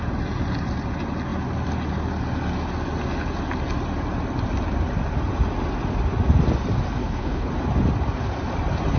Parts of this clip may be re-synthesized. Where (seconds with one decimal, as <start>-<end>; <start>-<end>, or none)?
7.0-7.5